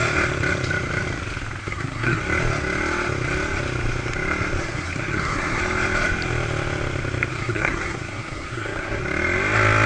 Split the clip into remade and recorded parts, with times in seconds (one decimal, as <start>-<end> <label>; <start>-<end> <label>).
0.0-1.6 recorded; 1.6-2.2 remade; 2.2-4.6 recorded; 4.6-5.6 remade; 5.6-7.3 recorded; 7.3-9.0 remade; 9.0-9.9 recorded